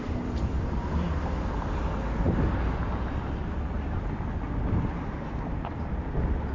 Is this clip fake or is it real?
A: real